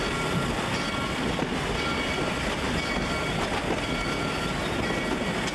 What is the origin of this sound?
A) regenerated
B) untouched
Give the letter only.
B